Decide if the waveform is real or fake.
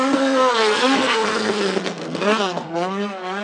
fake